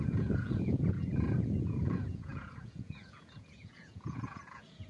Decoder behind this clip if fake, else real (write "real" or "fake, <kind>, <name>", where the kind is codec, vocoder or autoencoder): fake, vocoder, Vocos